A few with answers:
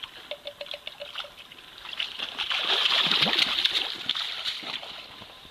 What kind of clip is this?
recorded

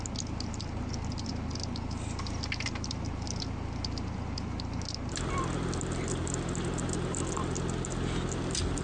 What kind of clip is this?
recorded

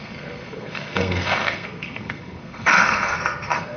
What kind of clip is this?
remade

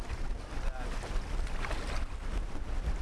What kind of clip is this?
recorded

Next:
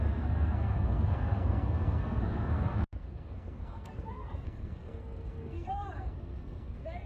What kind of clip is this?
remade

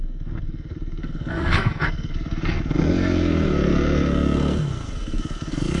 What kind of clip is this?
remade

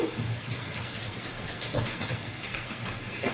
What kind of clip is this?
remade